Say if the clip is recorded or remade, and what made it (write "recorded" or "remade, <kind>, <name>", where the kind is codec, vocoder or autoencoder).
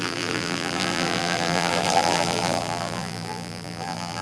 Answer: remade, vocoder, BigVGAN v2